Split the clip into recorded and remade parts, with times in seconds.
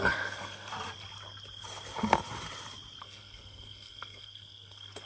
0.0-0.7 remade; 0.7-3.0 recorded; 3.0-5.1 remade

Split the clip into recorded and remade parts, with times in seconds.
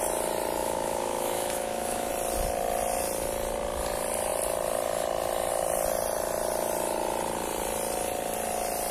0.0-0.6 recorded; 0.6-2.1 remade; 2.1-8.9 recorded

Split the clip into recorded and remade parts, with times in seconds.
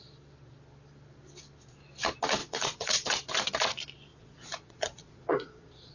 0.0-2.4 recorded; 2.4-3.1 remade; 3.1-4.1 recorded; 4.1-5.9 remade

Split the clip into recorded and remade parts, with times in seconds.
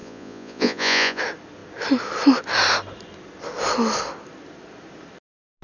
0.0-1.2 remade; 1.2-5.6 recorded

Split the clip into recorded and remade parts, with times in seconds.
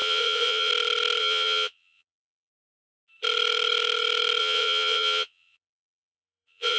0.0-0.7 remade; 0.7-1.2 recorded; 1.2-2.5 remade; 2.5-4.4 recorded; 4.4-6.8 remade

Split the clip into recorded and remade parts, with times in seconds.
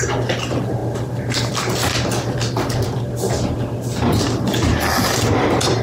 0.0-0.8 recorded; 0.8-1.5 remade; 1.5-5.8 recorded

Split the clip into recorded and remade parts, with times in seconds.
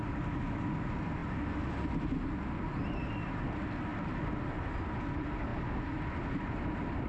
0.0-7.1 recorded